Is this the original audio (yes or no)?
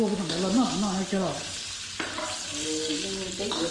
yes